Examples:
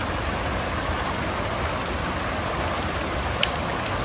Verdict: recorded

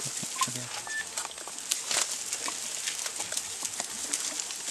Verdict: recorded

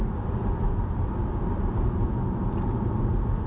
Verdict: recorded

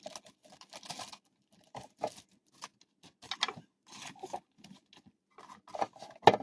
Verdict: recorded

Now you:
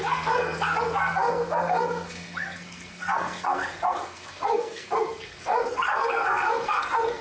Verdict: remade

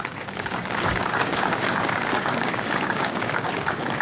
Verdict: remade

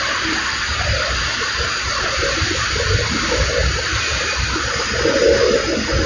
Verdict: recorded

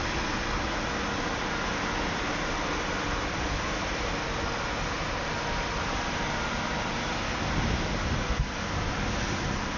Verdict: recorded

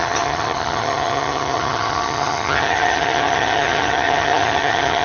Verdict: remade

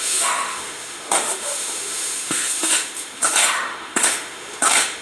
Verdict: remade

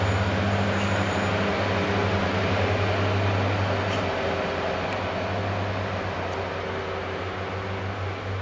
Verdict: recorded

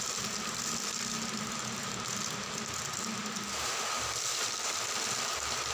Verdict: recorded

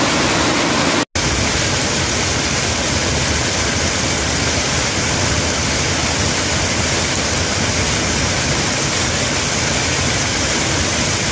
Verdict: recorded